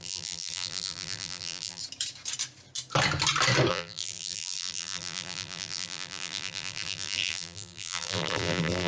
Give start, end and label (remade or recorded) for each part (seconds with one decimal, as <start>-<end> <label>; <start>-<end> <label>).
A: 0.0-1.8 remade; 1.8-3.7 recorded; 3.7-8.9 remade